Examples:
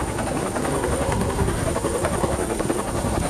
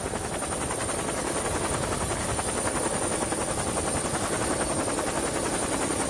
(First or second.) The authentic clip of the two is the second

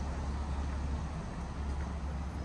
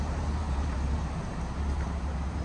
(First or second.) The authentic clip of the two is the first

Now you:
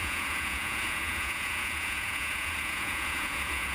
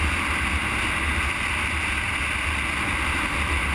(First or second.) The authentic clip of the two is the second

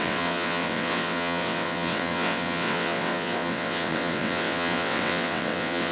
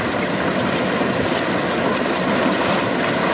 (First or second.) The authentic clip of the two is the second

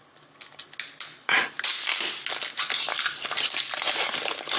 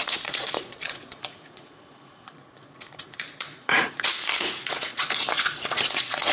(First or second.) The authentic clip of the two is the first